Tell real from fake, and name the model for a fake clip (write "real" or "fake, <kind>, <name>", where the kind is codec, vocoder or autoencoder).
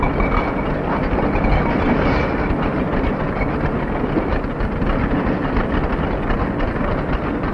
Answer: real